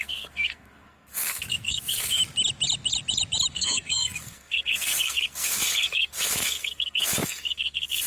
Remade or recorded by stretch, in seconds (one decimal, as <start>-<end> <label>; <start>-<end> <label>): 0.0-2.2 remade; 2.2-3.5 recorded; 3.5-8.1 remade